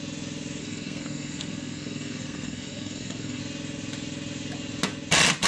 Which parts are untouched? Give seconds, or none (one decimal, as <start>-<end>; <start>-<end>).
0.0-0.6; 3.4-5.5